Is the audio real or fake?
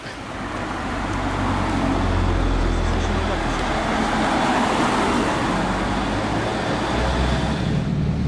real